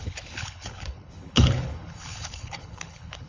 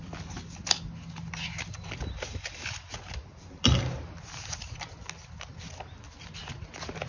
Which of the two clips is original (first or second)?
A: second